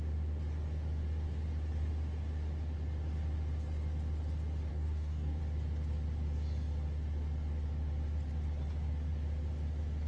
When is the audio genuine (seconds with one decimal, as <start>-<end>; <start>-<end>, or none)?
0.0-4.7; 5.4-10.1